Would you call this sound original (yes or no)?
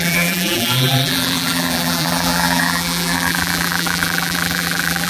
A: no